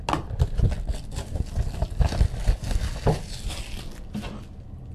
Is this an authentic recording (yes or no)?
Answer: yes